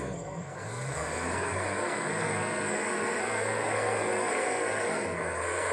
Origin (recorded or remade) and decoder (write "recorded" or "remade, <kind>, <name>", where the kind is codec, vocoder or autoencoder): remade, codec, SNAC